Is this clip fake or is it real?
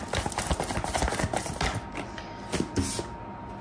real